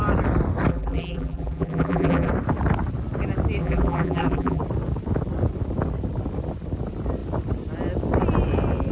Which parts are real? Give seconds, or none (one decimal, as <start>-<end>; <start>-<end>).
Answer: 0.0-0.7; 2.3-3.6; 4.6-8.9